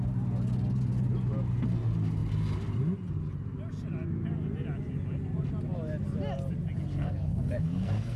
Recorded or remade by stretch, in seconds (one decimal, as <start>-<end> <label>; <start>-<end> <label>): 0.0-6.9 recorded; 6.9-8.2 remade